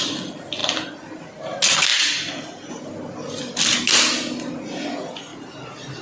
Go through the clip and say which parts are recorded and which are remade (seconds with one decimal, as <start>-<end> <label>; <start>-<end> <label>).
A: 0.0-6.0 recorded